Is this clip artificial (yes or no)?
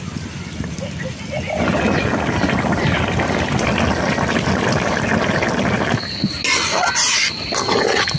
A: no